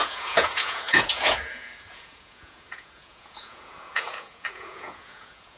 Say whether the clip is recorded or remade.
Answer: remade